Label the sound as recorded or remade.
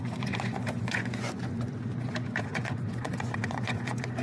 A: remade